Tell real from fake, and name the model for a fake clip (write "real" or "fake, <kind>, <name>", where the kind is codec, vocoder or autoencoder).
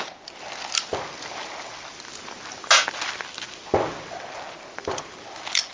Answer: real